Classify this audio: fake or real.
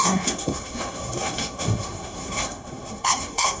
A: fake